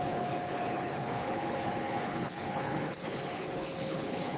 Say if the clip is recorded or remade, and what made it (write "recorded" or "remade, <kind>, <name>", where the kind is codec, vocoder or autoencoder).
remade, codec, HILCodec